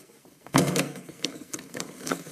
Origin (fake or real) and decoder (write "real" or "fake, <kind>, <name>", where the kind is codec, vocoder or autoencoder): fake, codec, SNAC